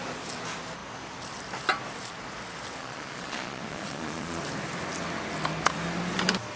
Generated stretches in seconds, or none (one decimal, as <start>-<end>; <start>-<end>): 2.8-4.4